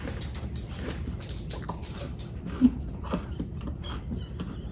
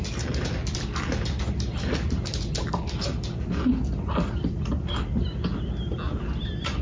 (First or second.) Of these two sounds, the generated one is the first